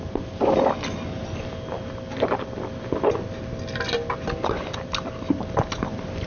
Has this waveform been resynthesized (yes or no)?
no